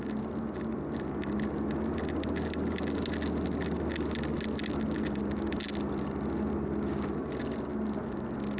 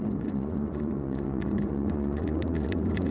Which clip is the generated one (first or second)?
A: second